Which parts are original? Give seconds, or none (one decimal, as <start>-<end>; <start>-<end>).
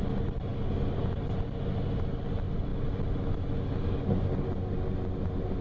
0.0-5.6